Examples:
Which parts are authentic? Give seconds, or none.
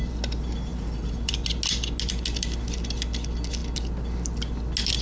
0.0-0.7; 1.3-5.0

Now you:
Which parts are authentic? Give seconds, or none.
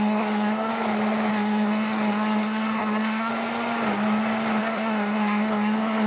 0.7-1.3; 3.3-4.6